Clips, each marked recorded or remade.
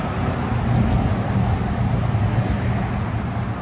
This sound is recorded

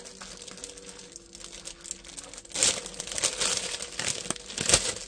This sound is recorded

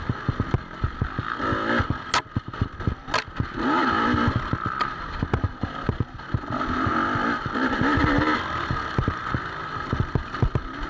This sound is recorded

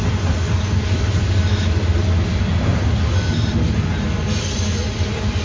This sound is recorded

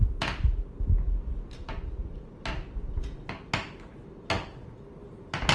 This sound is recorded